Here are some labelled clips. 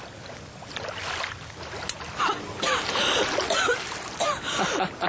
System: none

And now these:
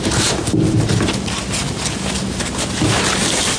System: none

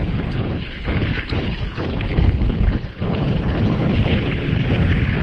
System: codec, HILCodec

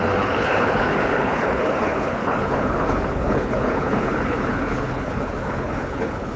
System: codec, HILCodec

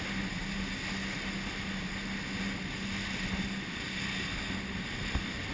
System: none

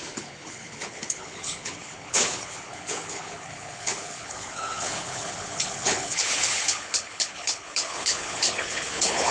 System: codec, HILCodec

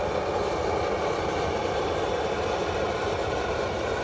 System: none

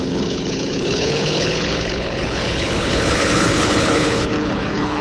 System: codec, HILCodec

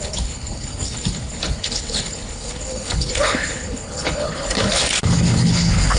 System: codec, HILCodec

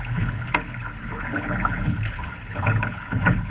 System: codec, HILCodec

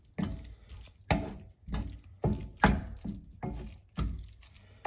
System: none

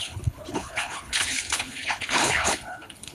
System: codec, HILCodec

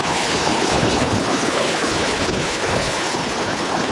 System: codec, HILCodec